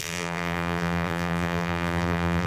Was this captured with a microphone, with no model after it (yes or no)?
no